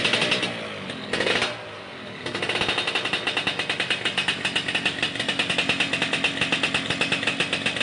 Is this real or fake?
real